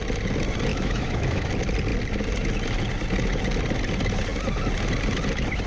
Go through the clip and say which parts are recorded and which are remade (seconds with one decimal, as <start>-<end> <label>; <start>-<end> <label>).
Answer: 0.0-0.7 recorded; 0.7-1.5 remade; 1.5-5.7 recorded